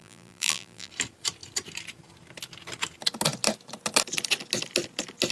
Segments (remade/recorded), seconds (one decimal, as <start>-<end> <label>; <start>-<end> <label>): 0.0-0.9 remade; 0.9-5.3 recorded